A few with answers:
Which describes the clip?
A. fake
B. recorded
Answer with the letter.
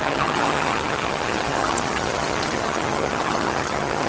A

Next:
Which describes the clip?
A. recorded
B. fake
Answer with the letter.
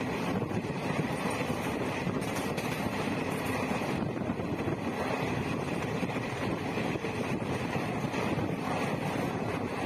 B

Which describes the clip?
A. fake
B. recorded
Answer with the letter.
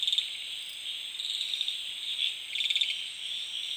B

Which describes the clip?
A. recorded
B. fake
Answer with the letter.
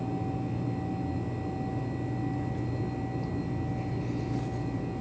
A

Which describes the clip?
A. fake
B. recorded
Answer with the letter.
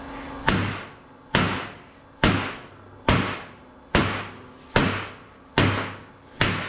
B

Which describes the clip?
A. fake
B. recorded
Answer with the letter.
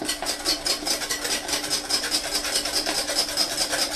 B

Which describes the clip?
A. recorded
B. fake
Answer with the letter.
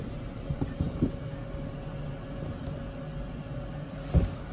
A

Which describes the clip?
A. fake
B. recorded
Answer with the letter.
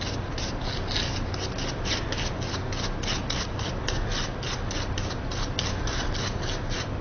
B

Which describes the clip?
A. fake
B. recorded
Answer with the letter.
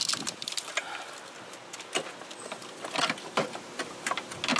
B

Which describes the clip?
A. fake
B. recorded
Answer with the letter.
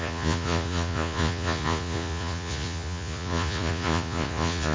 A